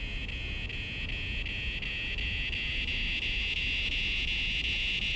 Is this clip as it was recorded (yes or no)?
yes